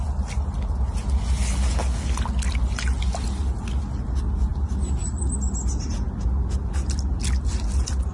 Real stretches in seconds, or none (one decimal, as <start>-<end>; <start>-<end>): 0.0-8.1